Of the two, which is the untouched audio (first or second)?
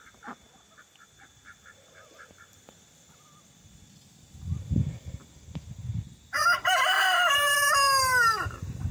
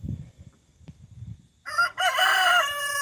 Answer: first